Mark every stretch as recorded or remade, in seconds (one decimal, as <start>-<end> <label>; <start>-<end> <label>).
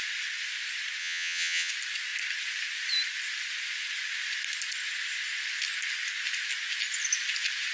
0.0-1.0 recorded; 1.0-1.7 remade; 1.7-7.7 recorded